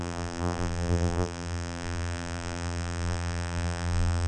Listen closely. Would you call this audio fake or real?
fake